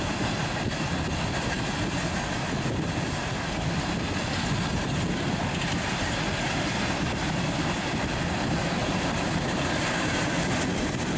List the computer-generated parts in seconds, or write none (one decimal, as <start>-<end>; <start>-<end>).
8.8-10.3